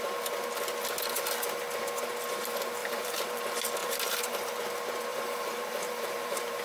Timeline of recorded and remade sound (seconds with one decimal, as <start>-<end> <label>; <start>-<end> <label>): 0.0-2.8 recorded; 2.8-3.4 remade; 3.4-3.8 recorded; 3.8-4.6 remade; 4.6-5.1 recorded; 5.1-6.6 remade